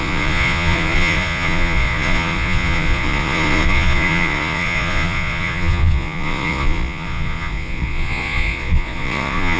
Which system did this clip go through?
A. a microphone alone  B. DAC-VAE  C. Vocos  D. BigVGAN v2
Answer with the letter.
C